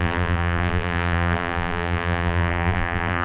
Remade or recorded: remade